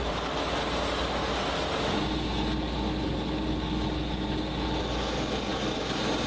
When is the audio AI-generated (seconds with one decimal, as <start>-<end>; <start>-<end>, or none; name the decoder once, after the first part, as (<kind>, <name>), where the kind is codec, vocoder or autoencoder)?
none

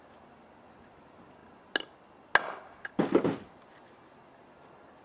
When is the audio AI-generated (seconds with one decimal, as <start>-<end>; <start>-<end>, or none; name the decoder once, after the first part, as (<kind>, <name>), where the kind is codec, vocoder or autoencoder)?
none

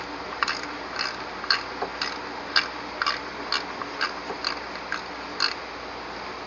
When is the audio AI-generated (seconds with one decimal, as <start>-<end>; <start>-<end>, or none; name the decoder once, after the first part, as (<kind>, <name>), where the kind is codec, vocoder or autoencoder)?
none

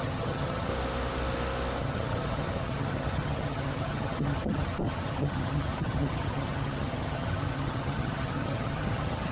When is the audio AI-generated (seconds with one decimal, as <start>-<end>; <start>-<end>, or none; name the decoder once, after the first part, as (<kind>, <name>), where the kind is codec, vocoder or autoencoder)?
0.0-0.7 (vocoder, HiFi-GAN); 1.8-9.3

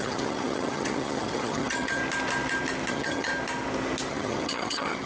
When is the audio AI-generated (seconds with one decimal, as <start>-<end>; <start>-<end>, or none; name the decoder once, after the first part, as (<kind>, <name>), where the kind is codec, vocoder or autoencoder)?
0.0-2.0 (vocoder, HiFi-GAN); 2.9-3.3; 4.1-5.1